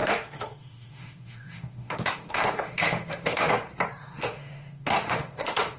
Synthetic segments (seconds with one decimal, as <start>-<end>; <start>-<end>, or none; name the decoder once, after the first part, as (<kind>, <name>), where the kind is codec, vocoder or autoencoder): 0.0-3.5 (autoencoder, DAC-VAE); 4.0-5.8